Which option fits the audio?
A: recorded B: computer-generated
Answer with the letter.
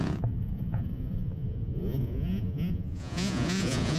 B